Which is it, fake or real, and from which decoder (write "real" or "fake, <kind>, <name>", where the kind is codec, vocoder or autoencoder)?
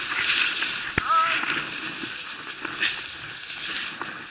real